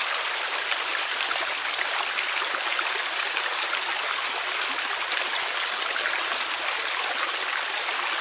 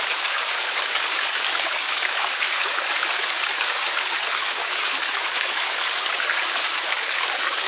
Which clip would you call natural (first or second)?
first